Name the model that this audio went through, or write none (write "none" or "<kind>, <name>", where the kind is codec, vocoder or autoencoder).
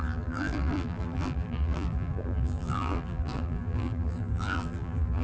vocoder, BigVGAN v2